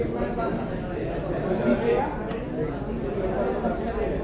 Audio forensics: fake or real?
real